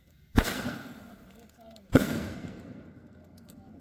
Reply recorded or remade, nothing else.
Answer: remade